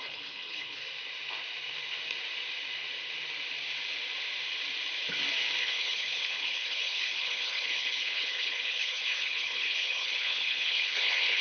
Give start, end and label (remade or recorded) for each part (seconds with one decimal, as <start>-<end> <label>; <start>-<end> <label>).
0.0-0.8 remade; 0.8-5.6 recorded; 5.6-11.4 remade